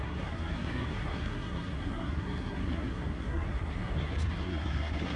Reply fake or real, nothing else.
fake